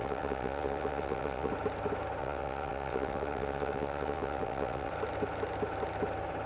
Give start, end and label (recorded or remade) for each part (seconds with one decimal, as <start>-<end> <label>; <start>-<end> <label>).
0.0-1.5 remade; 1.5-2.2 recorded; 2.2-4.9 remade; 4.9-6.5 recorded